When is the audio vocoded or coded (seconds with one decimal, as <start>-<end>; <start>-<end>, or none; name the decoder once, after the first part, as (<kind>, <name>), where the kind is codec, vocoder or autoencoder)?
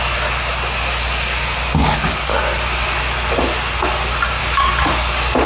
1.8-2.4 (codec, DAC); 4.4-5.5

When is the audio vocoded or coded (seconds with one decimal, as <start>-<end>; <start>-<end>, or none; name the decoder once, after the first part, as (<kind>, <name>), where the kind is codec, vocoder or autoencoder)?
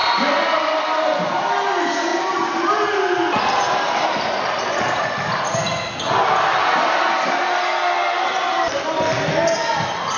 none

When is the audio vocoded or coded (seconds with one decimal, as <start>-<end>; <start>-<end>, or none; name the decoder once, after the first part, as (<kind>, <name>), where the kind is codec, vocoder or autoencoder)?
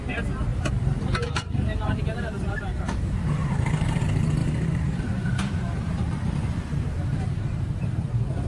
0.5-4.0 (vocoder, BigVGAN v2); 4.4-8.1